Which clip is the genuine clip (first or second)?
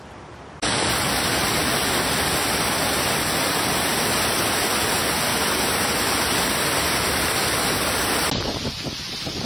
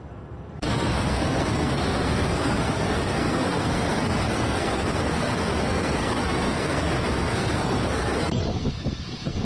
first